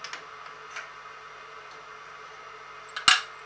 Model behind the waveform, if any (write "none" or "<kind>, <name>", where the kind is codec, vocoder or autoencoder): none